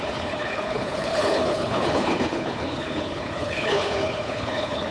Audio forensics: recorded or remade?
remade